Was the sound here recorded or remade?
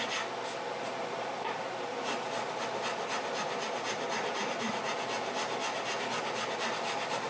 recorded